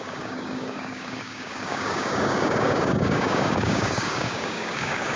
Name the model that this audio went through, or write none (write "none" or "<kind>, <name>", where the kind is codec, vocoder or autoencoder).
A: codec, DAC